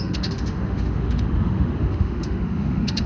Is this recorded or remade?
remade